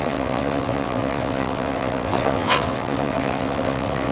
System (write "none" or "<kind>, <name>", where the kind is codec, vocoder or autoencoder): vocoder, WaveNeXt